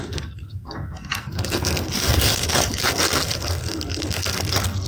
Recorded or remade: remade